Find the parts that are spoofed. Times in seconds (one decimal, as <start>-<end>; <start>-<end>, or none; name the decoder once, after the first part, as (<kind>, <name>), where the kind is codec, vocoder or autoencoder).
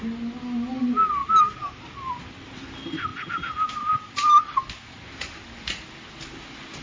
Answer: 1.2-2.1 (vocoder, BigVGAN v2)